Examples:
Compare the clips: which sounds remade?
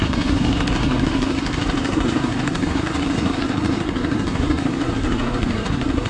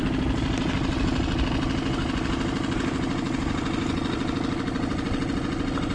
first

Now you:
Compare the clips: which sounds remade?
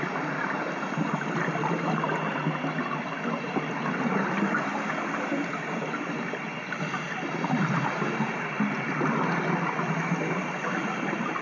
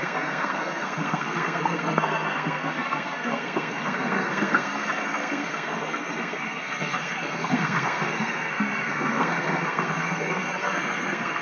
second